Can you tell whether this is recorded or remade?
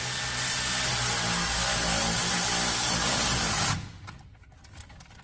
recorded